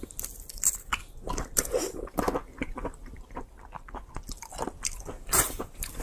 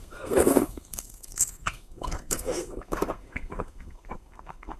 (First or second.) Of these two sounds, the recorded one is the first